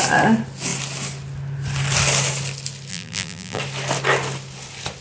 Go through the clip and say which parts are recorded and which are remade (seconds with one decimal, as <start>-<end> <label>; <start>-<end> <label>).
0.0-2.9 recorded; 2.9-3.6 remade; 3.6-5.0 recorded